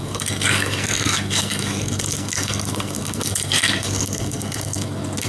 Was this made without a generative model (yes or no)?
no